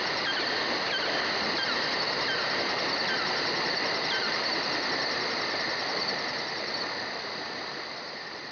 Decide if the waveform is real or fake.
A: real